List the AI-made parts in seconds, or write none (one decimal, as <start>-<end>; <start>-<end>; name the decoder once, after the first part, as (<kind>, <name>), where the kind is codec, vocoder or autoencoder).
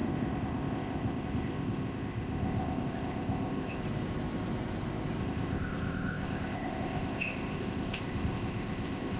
0.0-3.8 (codec, ZipCodec); 5.2-9.2